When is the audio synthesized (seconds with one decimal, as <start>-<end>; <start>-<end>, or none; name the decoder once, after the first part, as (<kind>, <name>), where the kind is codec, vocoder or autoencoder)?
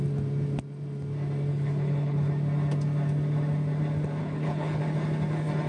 1.5-2.3 (codec, HILCodec); 4.2-4.8